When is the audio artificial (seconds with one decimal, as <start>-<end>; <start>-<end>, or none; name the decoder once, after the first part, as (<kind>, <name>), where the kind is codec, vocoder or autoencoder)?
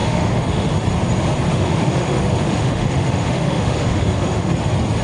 0.0-0.7 (autoencoder, DAC-VAE); 1.5-4.5